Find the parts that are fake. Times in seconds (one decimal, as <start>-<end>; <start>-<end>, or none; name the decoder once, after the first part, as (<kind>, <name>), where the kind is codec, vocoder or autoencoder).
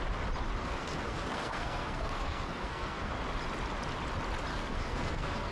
0.6-3.1 (codec, SNAC); 4.5-5.5